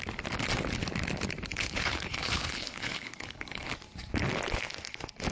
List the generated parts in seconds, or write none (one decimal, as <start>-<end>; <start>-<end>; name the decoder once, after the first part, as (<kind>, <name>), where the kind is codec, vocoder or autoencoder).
1.5-3.7 (codec, HILCodec)